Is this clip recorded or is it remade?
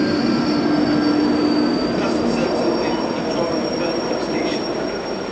recorded